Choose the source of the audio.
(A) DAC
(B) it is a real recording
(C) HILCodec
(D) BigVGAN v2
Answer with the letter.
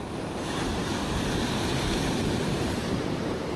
D